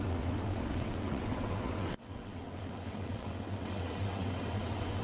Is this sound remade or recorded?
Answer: remade